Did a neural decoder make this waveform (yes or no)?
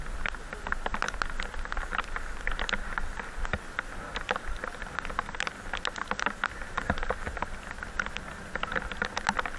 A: no